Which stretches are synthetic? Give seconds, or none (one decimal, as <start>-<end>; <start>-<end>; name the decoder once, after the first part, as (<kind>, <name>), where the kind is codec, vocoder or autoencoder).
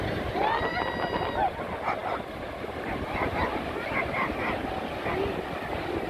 none